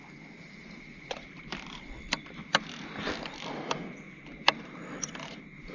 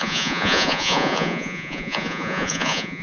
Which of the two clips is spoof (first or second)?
second